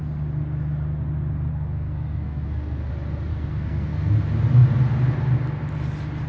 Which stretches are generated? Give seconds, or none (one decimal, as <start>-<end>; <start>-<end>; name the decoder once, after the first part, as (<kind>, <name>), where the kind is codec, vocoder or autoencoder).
1.5-2.9 (codec, SNAC); 3.3-4.1